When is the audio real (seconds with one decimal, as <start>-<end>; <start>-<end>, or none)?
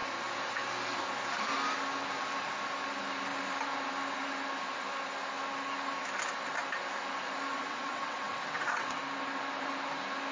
0.0-7.5; 9.0-10.3